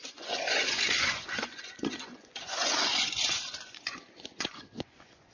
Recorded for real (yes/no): no